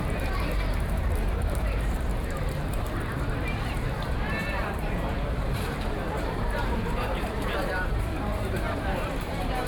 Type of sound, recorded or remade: remade